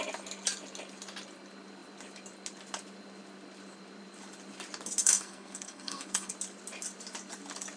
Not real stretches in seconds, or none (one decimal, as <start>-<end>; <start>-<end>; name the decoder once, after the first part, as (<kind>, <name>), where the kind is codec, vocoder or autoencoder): 5.0-6.3 (codec, SNAC)